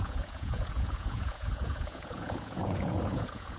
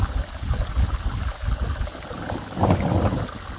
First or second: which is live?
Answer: second